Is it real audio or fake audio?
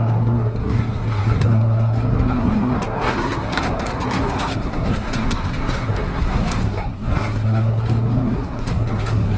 fake